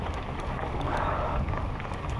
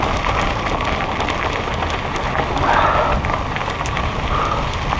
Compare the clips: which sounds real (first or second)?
second